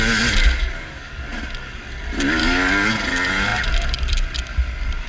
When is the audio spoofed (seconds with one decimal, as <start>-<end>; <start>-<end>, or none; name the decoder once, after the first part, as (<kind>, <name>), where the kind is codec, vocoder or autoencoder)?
0.6-1.2 (codec, DAC); 2.4-2.9